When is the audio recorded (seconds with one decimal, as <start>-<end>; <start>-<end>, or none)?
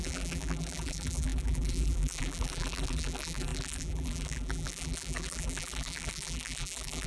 none